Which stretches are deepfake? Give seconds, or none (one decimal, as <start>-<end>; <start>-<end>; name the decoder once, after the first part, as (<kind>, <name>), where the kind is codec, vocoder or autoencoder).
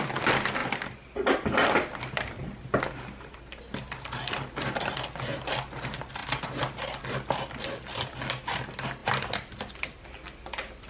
0.6-3.4 (vocoder, BigVGAN v2); 6.2-7.0; 9.0-9.6